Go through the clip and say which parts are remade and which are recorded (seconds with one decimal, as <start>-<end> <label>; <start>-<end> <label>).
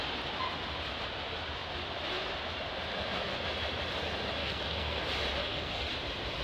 0.0-4.4 recorded; 4.4-5.0 remade; 5.0-5.4 recorded; 5.4-5.9 remade; 5.9-6.4 recorded